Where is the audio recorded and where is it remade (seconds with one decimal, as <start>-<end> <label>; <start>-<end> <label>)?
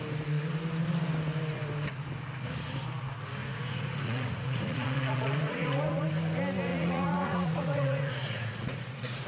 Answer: 0.0-3.4 recorded; 3.4-6.1 remade; 6.1-6.7 recorded; 6.7-9.3 remade